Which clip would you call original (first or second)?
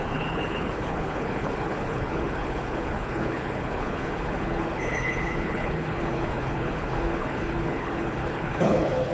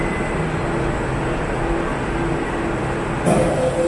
second